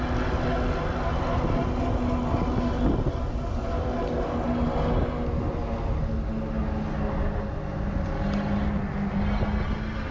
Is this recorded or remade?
recorded